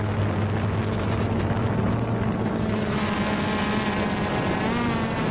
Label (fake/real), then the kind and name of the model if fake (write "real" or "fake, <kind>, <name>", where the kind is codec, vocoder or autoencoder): real